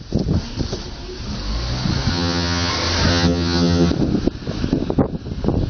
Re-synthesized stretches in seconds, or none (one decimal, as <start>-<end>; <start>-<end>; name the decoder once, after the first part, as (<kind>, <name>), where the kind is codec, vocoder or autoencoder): 2.1-2.7 (vocoder, HiFi-GAN); 3.1-3.9